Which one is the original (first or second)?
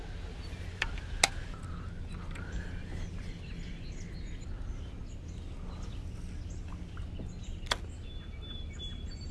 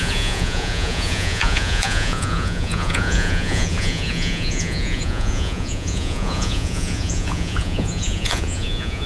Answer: first